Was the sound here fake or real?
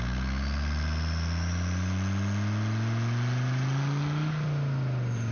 real